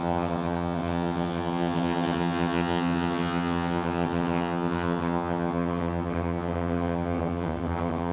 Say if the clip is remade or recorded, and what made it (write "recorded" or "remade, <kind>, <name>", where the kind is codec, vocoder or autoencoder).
remade, vocoder, HiFi-GAN